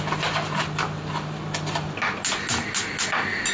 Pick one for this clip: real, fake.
real